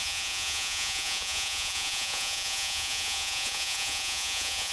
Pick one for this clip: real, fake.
fake